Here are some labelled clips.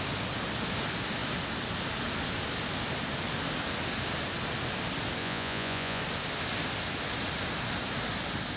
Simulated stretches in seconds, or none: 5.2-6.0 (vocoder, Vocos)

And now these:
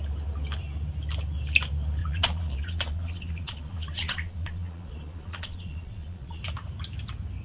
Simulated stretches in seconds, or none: 2.0-6.4 (vocoder, Vocos)

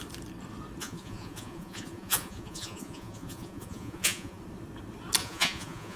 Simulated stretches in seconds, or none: 0.8-4.4 (vocoder, Vocos); 5.2-6.0

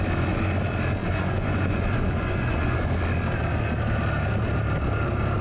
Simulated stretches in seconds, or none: 1.0-2.9 (vocoder, Vocos)

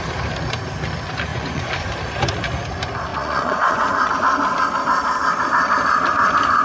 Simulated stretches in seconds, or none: 1.3-1.9 (vocoder, Vocos); 3.1-4.1